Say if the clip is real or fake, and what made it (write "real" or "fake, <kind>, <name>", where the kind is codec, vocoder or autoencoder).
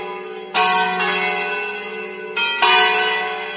real